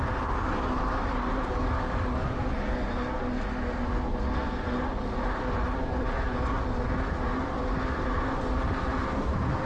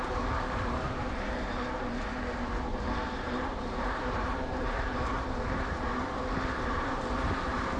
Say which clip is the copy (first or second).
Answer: second